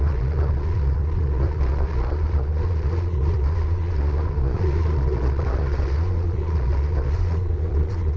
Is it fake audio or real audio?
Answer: fake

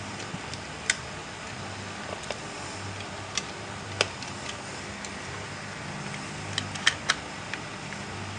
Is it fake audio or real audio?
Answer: real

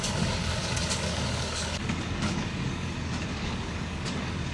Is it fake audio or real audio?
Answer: fake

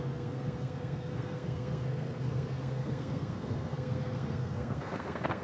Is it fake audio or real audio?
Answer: fake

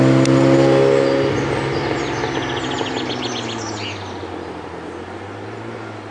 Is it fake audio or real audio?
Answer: real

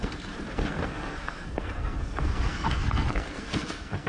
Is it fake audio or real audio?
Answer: fake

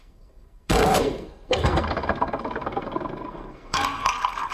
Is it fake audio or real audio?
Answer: fake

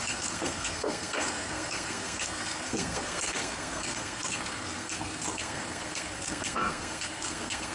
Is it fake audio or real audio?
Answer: fake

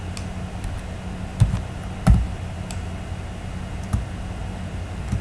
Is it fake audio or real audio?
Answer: real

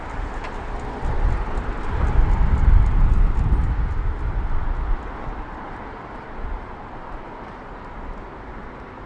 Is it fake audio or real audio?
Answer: real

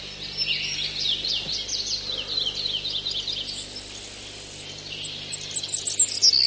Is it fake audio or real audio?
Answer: real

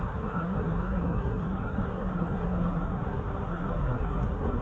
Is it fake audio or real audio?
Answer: fake